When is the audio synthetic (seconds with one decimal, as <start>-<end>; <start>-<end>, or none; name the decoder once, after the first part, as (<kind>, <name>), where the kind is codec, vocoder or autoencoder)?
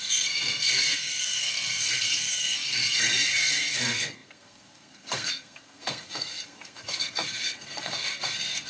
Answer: 0.0-8.7 (codec, SNAC)